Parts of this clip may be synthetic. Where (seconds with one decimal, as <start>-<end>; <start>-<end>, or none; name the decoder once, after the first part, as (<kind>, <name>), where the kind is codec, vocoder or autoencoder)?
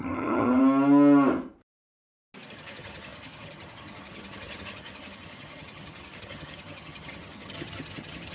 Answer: 0.0-0.6 (vocoder, HiFi-GAN); 2.5-8.3